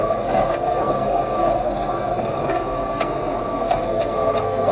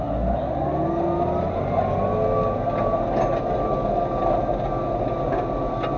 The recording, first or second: second